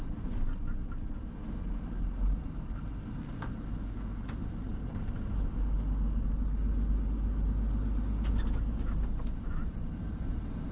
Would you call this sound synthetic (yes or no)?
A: no